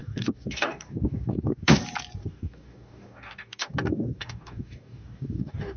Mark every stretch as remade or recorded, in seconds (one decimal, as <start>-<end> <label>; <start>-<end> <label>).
0.0-1.8 remade; 1.8-2.2 recorded; 2.2-5.8 remade